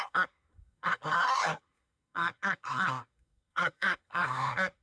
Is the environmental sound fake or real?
fake